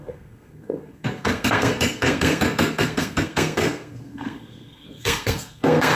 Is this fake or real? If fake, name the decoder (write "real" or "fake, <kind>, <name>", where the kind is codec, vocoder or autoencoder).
fake, codec, SNAC